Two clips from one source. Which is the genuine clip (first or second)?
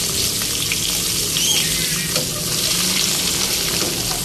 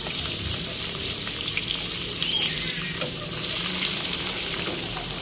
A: first